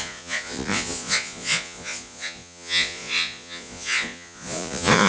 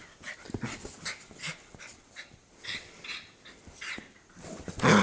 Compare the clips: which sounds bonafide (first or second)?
second